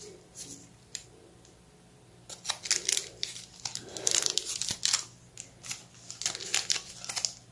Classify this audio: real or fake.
real